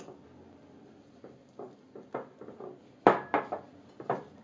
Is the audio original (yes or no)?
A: yes